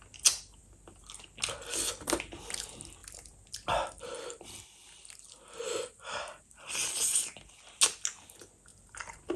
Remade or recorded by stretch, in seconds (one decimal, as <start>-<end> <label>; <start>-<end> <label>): 0.0-3.0 recorded; 3.0-4.6 remade; 4.6-8.7 recorded; 8.7-9.4 remade

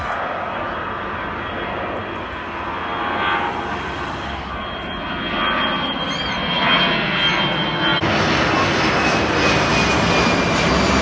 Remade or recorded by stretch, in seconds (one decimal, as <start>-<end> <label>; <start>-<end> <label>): 0.0-11.0 recorded

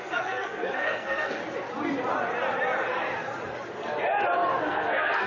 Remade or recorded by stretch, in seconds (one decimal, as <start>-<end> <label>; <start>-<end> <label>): 0.0-1.4 remade; 1.4-4.6 recorded; 4.6-5.3 remade

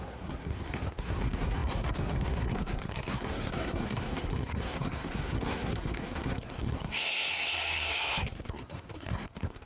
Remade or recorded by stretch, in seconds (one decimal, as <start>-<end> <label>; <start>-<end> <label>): 0.0-9.7 remade

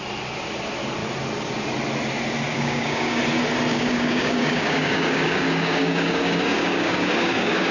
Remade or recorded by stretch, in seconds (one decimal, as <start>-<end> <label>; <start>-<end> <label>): 0.0-2.5 recorded; 2.5-3.2 remade; 3.2-3.7 recorded; 3.7-7.7 remade

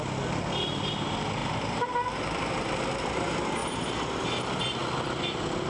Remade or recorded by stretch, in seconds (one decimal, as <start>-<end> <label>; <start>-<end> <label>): 0.0-1.4 recorded; 1.4-3.2 remade; 3.2-3.6 recorded; 3.6-4.2 remade; 4.2-5.7 recorded

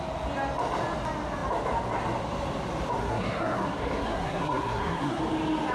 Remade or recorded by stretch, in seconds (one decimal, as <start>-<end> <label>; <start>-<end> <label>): 0.0-3.0 recorded; 3.0-5.2 remade; 5.2-5.7 recorded